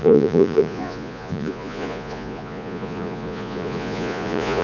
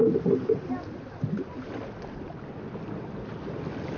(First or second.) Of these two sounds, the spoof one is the first